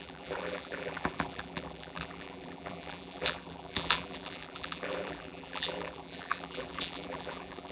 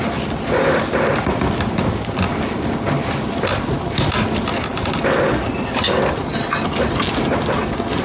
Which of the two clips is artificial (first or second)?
first